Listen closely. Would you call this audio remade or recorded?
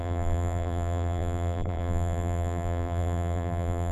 remade